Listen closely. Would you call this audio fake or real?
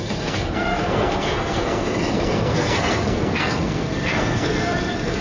fake